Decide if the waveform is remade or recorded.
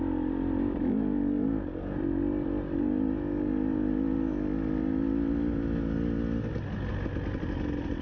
recorded